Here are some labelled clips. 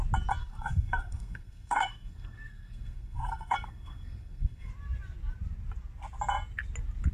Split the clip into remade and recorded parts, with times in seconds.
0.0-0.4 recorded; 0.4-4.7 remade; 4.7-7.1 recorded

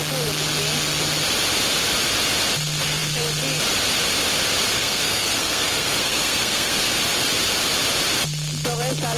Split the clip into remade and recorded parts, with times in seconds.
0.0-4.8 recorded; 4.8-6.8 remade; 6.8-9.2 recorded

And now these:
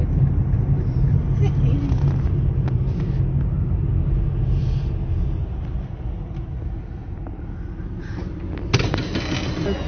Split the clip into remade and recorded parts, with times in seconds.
0.0-9.9 recorded

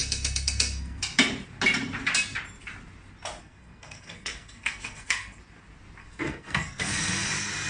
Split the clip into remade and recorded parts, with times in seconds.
0.0-1.0 remade; 1.0-3.4 recorded; 3.4-5.4 remade; 5.4-6.0 recorded; 6.0-7.3 remade; 7.3-7.7 recorded

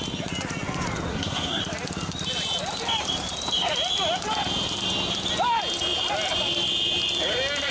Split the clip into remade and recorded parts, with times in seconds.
0.0-1.1 recorded; 1.1-1.6 remade; 1.6-7.7 recorded

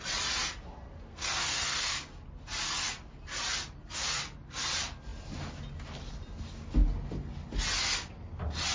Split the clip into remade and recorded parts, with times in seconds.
0.0-1.1 recorded; 1.1-1.9 remade; 1.9-8.7 recorded